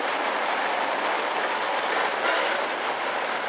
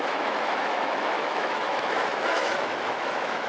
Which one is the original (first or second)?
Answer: first